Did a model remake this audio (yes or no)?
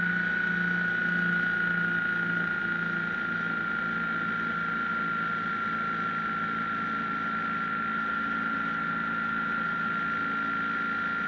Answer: no